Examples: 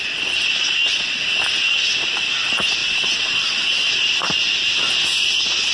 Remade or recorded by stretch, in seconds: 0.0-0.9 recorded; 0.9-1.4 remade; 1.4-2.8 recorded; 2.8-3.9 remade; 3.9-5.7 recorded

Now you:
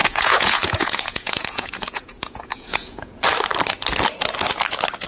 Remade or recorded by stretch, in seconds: 0.0-3.1 remade; 3.1-5.1 recorded

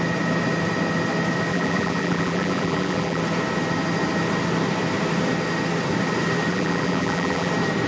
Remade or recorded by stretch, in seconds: 0.0-1.5 recorded; 1.5-3.2 remade; 3.2-6.5 recorded; 6.5-7.5 remade; 7.5-7.9 recorded

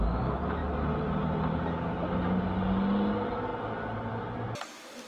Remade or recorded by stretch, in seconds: 0.0-5.1 recorded